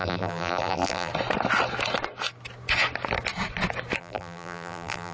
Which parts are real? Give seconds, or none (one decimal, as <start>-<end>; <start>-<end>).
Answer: 1.1-4.0